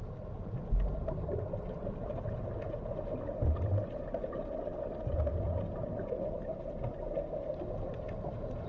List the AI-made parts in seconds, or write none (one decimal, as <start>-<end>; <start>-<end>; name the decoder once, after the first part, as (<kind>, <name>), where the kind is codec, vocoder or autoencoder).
none